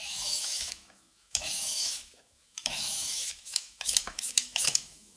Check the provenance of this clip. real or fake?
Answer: fake